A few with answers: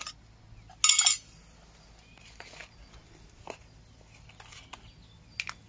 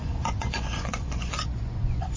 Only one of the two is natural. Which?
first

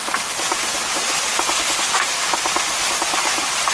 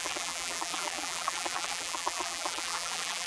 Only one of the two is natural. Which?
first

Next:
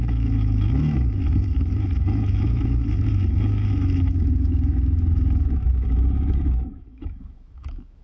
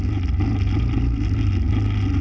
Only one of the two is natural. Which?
second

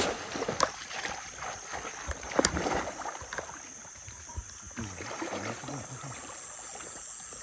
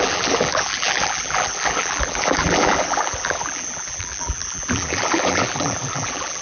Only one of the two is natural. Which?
first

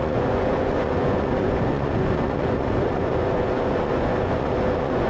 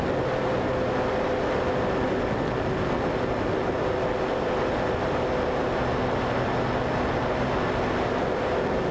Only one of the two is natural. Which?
second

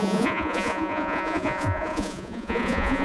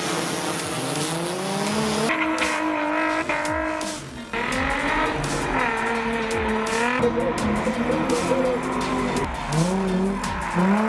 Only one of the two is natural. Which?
second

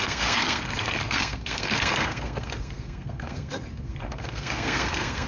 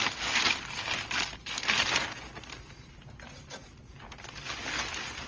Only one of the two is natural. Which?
second